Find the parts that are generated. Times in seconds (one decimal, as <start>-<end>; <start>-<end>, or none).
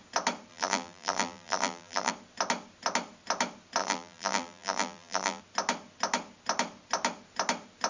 0.5-2.1; 3.8-5.4